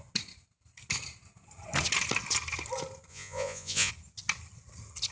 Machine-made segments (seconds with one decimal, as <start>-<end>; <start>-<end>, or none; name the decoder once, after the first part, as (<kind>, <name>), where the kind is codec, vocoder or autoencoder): 3.1-3.9 (vocoder, Vocos)